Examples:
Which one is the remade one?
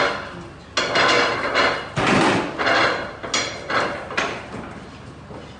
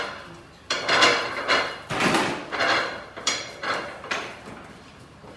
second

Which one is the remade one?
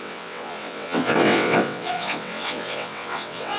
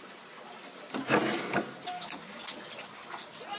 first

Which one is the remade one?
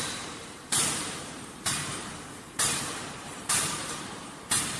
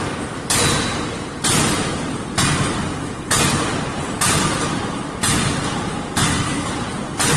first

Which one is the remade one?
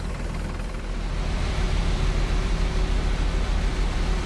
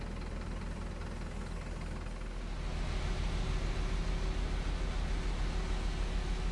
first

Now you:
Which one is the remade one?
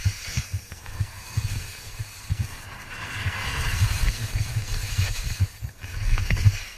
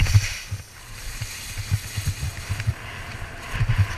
first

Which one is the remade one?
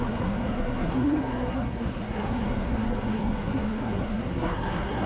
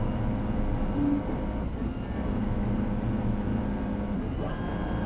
first